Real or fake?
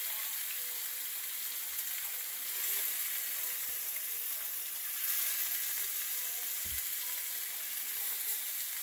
real